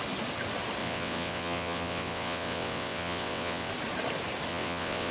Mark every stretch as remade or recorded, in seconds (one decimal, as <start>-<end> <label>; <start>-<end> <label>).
0.0-0.8 recorded; 0.8-3.7 remade; 3.7-4.5 recorded; 4.5-5.1 remade